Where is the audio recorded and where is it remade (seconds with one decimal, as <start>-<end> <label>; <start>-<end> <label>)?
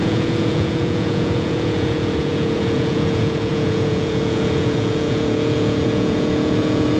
0.0-7.0 remade